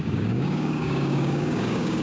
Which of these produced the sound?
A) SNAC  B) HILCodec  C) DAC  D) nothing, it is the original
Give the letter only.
C